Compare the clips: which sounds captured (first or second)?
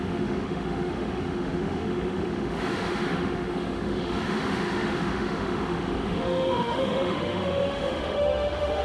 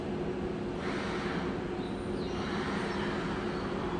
second